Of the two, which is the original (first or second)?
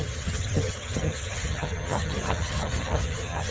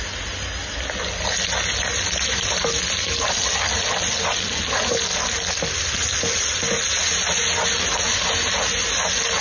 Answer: second